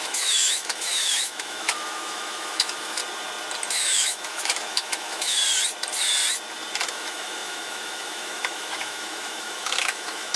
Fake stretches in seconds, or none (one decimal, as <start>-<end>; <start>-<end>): 0.0-3.0; 3.7-5.4; 6.9-10.4